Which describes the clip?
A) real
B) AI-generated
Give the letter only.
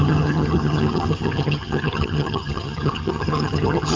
B